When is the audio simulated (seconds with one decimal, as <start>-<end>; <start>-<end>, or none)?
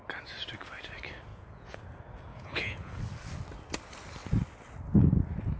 1.3-1.8; 2.3-3.0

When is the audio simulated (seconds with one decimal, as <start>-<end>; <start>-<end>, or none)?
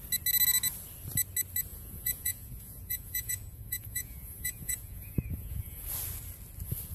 1.7-5.8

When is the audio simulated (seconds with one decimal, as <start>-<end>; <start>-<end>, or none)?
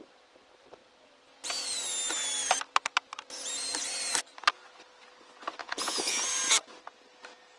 5.6-6.2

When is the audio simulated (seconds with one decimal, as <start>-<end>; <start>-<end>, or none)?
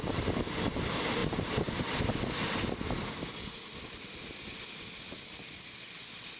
none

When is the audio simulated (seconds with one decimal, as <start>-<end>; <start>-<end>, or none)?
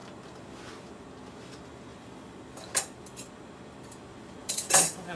4.4-5.2